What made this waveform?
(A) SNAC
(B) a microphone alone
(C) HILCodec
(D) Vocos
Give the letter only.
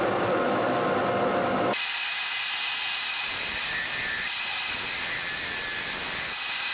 B